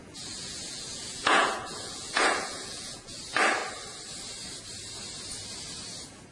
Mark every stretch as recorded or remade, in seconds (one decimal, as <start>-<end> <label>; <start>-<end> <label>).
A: 0.0-3.2 remade; 3.2-6.3 recorded